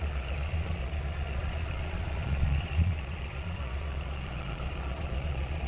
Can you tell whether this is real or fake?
fake